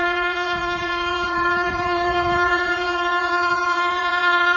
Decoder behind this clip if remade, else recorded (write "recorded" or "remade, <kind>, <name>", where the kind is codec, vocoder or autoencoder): remade, vocoder, Vocos